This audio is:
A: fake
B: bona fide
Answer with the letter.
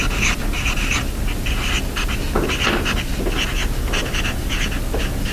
B